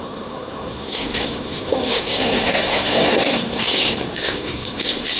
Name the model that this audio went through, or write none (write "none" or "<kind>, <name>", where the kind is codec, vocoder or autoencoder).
codec, SNAC